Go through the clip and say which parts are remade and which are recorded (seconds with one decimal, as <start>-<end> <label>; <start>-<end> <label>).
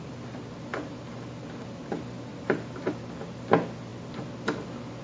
0.0-2.3 recorded; 2.3-2.9 remade; 2.9-5.0 recorded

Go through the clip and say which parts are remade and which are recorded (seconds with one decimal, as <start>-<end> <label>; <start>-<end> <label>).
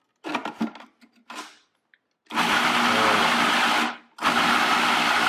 0.0-5.3 recorded